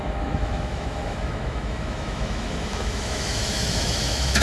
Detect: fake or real fake